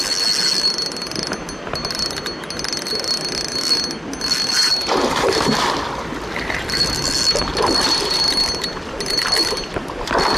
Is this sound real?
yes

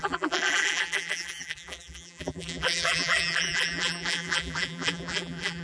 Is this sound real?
no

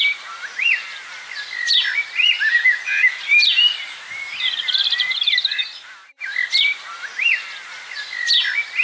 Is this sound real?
no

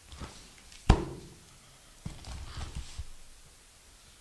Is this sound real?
yes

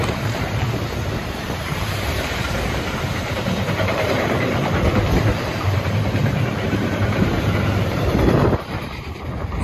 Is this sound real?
no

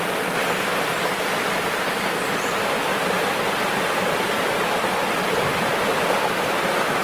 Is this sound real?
no